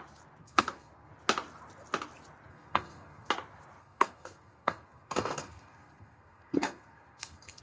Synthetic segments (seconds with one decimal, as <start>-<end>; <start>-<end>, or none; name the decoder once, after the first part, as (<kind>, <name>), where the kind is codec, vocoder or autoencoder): 0.4-1.1 (codec, SNAC); 2.5-3.3; 3.8-7.6